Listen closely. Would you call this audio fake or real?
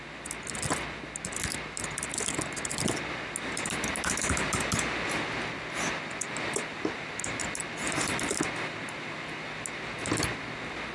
real